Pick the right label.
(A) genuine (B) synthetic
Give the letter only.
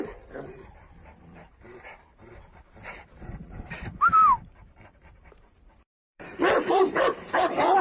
B